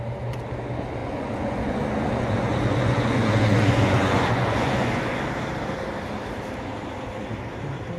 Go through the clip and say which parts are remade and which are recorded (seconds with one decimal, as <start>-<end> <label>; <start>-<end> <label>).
0.0-1.0 recorded; 1.0-5.2 remade; 5.2-8.0 recorded